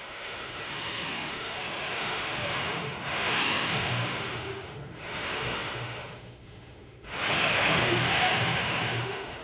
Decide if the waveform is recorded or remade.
remade